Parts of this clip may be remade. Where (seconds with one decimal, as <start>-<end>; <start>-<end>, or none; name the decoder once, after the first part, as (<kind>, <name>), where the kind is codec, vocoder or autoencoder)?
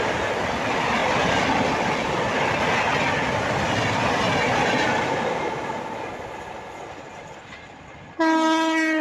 none